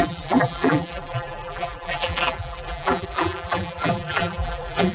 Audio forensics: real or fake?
fake